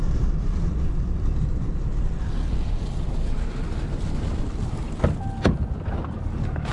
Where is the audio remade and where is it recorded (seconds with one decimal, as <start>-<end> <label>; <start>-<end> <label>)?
0.0-0.7 remade; 0.7-6.7 recorded